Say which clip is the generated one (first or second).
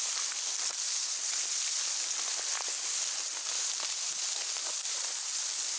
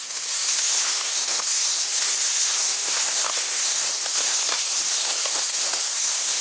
second